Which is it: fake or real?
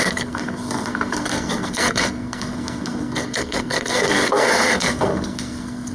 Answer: fake